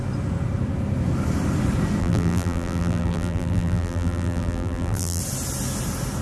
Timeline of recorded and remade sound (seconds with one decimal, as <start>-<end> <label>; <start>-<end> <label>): 0.0-2.0 recorded; 2.0-5.2 remade; 5.2-6.2 recorded